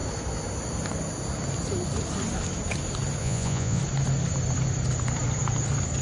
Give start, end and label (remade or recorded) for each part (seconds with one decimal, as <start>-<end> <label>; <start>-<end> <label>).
0.0-3.2 recorded; 3.2-3.8 remade; 3.8-6.0 recorded